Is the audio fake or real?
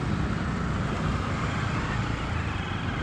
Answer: real